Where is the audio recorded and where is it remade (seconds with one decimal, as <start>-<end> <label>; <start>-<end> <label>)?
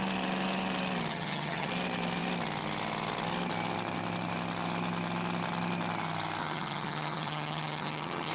0.0-1.1 recorded; 1.1-1.7 remade; 1.7-6.4 recorded; 6.4-8.3 remade